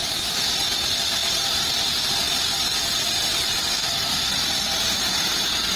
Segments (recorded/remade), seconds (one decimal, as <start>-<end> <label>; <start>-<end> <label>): 0.0-3.7 recorded; 3.7-4.3 remade; 4.3-5.8 recorded